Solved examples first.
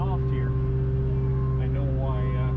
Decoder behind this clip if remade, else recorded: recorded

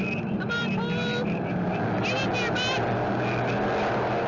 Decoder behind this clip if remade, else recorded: recorded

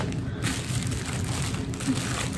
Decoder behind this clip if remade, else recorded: recorded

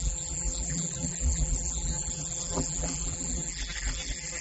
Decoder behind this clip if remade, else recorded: remade, vocoder, BigVGAN v2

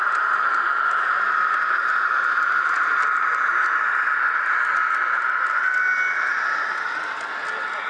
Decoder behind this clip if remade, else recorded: recorded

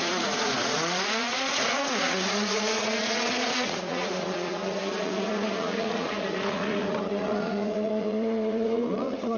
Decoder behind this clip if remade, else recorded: remade, vocoder, Vocos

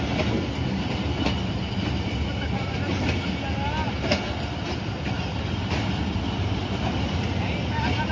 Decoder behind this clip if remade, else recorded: recorded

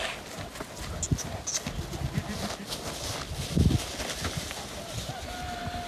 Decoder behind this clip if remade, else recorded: recorded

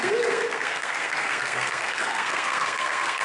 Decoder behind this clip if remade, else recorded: remade, codec, SNAC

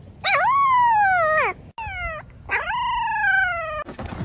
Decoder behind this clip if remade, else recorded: recorded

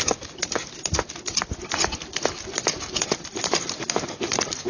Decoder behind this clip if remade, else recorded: recorded